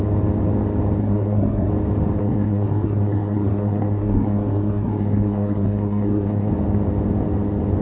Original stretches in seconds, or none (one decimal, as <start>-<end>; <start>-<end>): 0.0-1.0; 1.7-2.2; 6.5-7.8